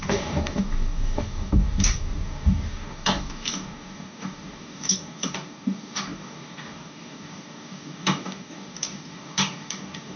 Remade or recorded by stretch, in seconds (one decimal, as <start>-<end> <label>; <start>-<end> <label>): 0.0-10.2 remade